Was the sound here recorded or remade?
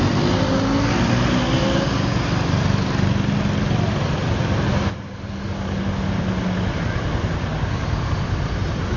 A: recorded